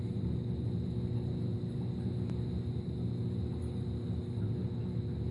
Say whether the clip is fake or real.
real